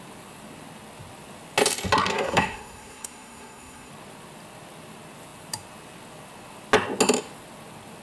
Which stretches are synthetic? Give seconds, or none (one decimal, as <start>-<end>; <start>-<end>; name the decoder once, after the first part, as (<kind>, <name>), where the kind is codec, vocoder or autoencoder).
2.1-3.9 (codec, SNAC)